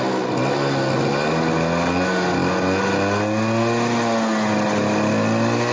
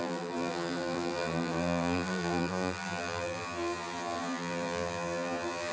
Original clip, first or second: first